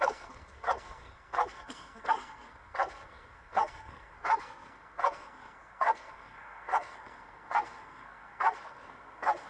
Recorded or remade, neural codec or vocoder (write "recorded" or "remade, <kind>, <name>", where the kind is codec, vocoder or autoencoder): remade, codec, SNAC